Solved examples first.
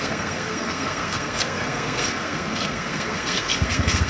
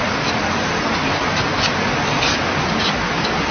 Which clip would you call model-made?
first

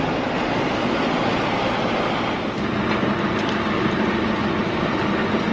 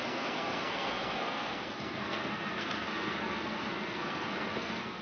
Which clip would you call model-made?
second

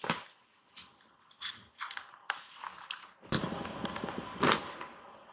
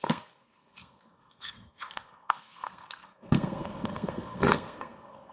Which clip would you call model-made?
second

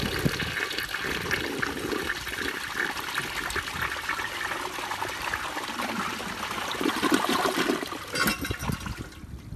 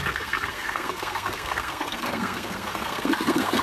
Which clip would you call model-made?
second